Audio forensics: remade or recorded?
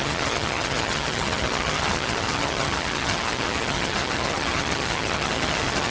remade